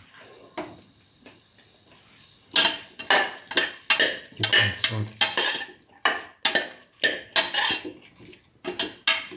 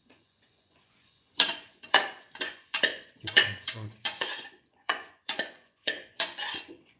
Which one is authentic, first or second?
first